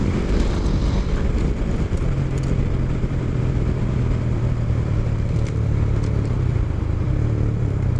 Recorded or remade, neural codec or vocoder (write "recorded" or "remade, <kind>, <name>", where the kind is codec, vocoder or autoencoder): remade, vocoder, BigVGAN v2